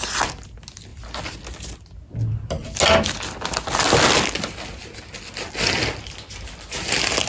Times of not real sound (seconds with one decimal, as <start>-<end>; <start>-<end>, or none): none